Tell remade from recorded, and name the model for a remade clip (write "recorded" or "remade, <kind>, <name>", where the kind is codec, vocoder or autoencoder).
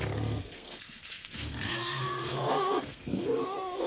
remade, codec, SNAC